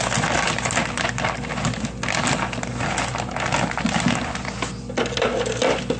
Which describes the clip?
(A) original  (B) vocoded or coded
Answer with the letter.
A